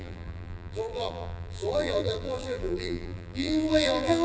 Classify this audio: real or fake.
fake